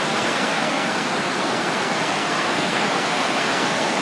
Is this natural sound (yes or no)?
no